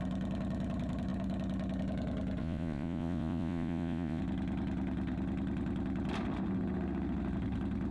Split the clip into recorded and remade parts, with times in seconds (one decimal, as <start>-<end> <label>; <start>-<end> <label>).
0.0-2.4 recorded; 2.4-4.2 remade; 4.2-7.9 recorded